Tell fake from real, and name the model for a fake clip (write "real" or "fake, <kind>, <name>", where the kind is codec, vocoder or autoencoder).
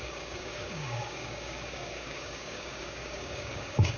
fake, codec, DAC